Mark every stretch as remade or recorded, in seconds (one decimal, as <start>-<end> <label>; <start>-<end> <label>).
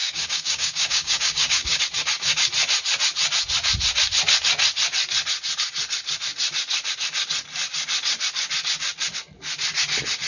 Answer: 0.0-1.8 remade; 1.8-10.3 recorded